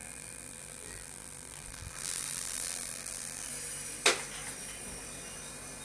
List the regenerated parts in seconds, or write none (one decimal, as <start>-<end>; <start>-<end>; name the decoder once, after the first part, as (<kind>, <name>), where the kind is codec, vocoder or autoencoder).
0.0-3.5 (vocoder, BigVGAN v2)